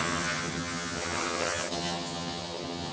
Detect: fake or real fake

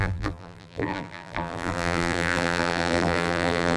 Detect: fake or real fake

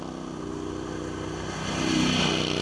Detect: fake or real real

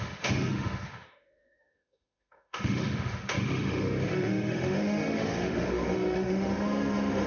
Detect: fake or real fake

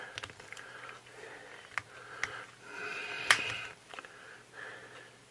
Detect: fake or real real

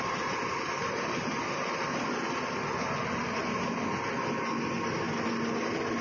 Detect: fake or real real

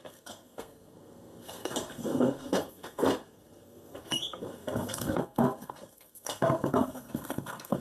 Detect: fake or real fake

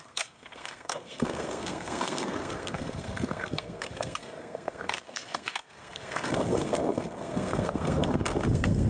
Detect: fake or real fake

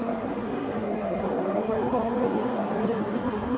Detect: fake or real fake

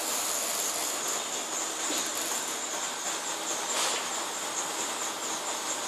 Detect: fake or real real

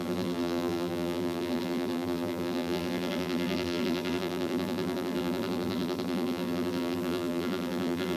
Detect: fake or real fake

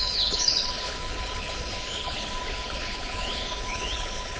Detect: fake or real fake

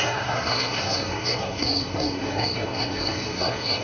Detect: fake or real fake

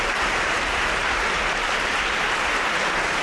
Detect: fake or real fake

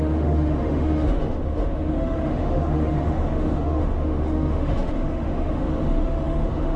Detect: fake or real fake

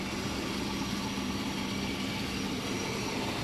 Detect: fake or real real